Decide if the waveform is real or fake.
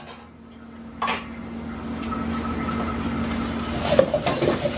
real